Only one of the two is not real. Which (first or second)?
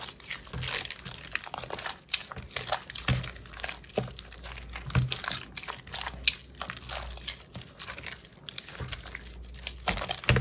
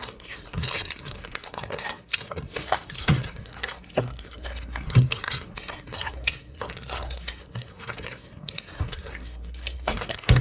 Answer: second